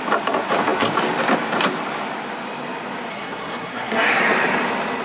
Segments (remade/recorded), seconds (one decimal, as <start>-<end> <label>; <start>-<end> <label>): 0.0-3.1 recorded; 3.1-4.2 remade; 4.2-5.0 recorded